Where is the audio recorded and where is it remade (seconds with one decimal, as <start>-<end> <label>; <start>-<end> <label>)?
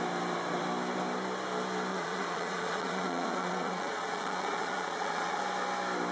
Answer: 0.0-1.9 recorded; 1.9-5.4 remade; 5.4-6.1 recorded